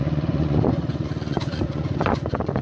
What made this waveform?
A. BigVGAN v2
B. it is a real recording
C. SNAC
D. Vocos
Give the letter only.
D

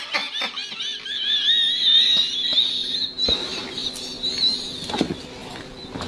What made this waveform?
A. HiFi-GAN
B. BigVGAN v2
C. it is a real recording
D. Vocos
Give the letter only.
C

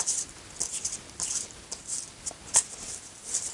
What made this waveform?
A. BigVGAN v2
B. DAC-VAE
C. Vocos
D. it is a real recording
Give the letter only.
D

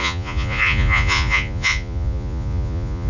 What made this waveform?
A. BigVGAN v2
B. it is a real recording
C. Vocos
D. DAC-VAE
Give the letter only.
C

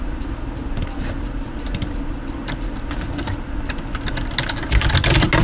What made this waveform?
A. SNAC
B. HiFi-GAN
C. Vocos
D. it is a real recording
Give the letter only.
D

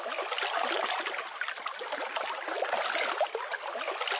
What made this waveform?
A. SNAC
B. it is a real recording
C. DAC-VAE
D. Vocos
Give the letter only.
B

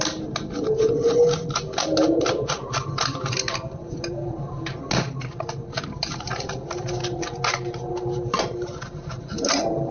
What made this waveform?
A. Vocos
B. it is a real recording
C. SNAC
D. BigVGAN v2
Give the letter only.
B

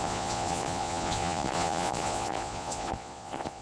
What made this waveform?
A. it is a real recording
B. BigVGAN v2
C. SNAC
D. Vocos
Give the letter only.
D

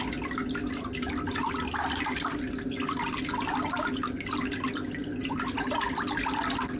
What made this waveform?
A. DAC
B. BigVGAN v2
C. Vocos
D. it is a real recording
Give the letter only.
D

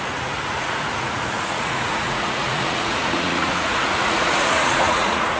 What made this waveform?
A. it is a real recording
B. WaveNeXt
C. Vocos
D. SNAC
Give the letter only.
C